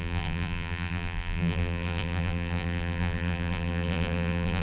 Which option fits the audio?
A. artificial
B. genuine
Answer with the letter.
A